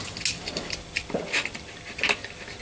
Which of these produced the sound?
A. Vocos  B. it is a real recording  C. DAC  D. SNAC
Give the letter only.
B